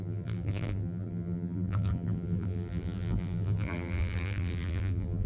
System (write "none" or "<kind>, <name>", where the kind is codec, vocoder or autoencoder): vocoder, BigVGAN v2